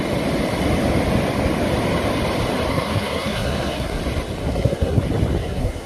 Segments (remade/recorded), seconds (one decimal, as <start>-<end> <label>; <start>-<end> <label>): 0.0-2.7 recorded; 2.7-4.0 remade; 4.0-4.4 recorded; 4.4-5.0 remade; 5.0-5.4 recorded; 5.4-5.9 remade